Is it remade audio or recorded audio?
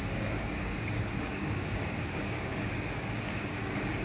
remade